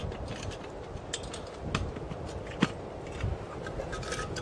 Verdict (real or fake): real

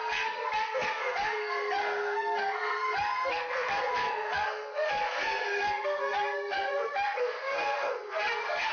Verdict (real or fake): fake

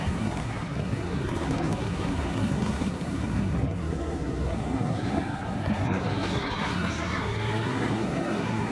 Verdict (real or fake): fake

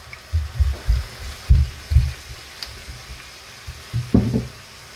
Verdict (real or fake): real